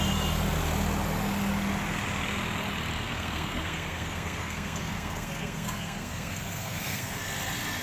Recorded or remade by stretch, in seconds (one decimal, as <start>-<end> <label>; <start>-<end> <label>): 0.0-3.0 recorded; 3.0-7.2 remade; 7.2-7.8 recorded